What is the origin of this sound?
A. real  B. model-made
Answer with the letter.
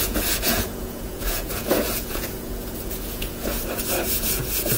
B